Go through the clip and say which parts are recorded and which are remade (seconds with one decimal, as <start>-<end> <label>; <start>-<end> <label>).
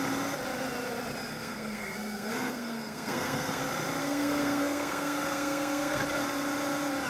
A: 0.0-1.3 recorded; 1.3-3.6 remade; 3.6-4.0 recorded; 4.0-6.0 remade; 6.0-7.1 recorded